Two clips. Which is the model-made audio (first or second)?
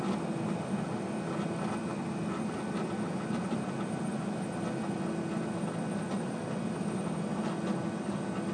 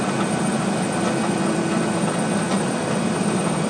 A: second